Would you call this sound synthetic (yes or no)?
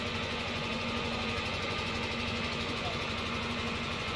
yes